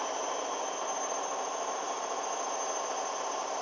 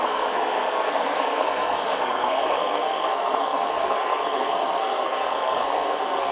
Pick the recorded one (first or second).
first